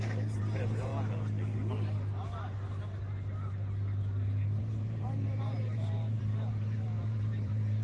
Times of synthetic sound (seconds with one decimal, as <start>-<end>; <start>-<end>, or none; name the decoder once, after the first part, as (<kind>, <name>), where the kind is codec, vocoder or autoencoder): 0.0-0.9 (vocoder, BigVGAN v2); 4.6-7.8